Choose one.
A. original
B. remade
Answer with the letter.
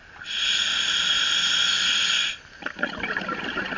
A